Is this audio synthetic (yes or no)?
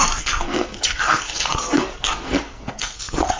yes